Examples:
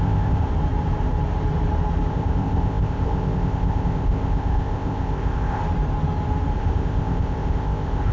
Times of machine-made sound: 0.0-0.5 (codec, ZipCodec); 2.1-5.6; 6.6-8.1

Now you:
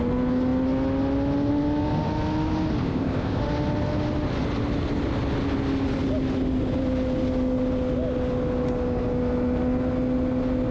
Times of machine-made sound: 2.8-3.4 (codec, ZipCodec)